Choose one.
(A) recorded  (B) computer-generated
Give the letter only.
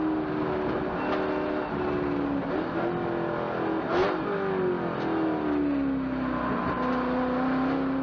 A